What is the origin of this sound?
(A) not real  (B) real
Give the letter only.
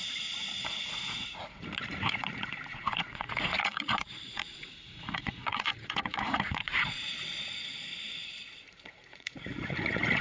A